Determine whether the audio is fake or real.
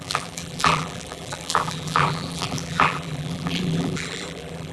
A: fake